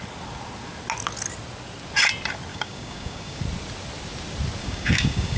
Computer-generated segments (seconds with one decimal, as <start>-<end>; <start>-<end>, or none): 2.5-3.4; 4.6-5.4